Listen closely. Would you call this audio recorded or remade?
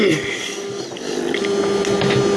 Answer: recorded